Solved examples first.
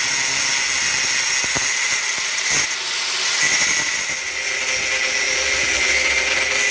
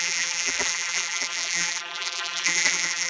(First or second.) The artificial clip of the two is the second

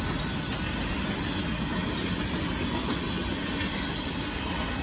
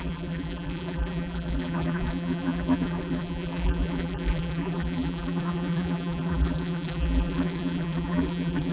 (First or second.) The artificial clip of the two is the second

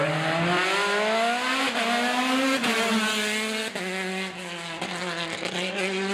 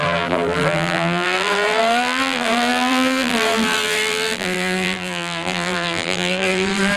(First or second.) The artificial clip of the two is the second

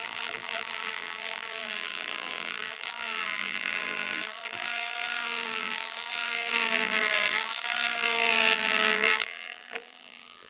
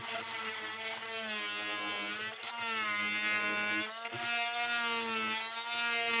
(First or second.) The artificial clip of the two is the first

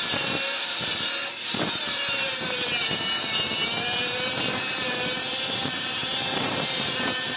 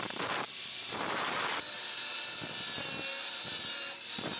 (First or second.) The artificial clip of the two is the first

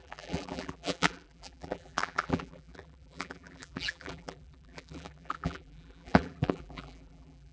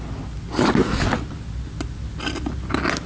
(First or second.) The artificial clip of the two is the first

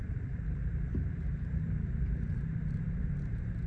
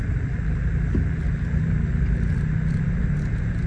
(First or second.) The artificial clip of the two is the first